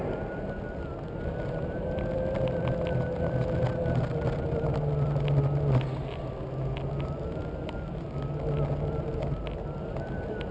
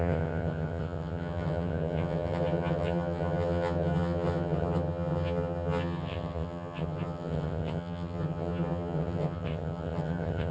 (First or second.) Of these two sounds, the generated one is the second